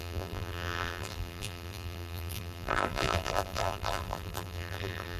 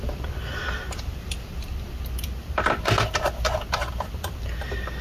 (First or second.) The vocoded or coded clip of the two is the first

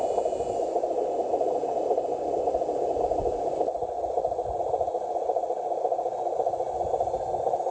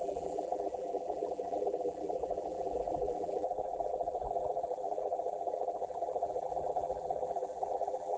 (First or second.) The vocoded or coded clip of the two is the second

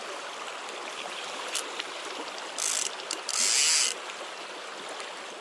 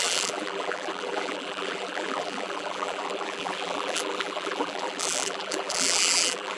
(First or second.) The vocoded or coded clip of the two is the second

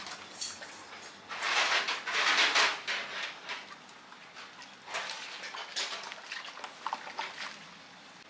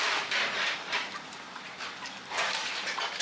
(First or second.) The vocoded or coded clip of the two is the second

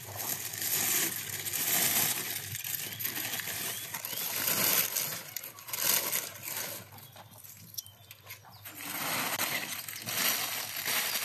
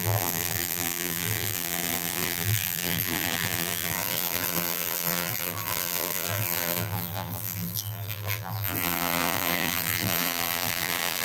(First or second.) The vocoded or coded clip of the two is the second